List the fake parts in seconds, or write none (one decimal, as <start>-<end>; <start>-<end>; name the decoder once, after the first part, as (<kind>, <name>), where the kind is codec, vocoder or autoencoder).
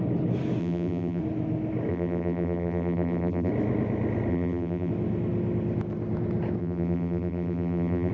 0.6-1.2 (vocoder, BigVGAN v2); 1.9-3.5; 4.3-4.9; 6.6-8.1